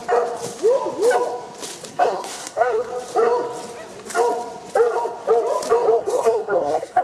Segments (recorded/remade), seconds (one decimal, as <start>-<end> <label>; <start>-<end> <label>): 0.0-1.9 recorded; 1.9-2.9 remade; 2.9-6.0 recorded; 6.0-7.0 remade